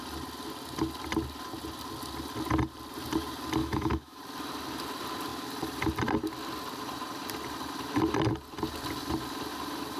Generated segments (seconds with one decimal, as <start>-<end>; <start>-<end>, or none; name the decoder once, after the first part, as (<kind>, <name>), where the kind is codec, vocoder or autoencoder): 3.6-4.2 (autoencoder, DAC-VAE)